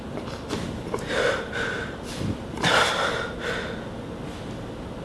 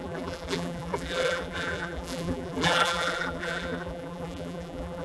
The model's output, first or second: second